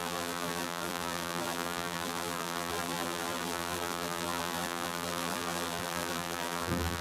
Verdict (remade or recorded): remade